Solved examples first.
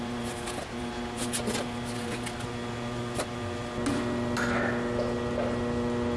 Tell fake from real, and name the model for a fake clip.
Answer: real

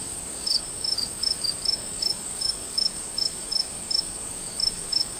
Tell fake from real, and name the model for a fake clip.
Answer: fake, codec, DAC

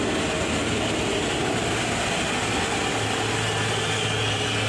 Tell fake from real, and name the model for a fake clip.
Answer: real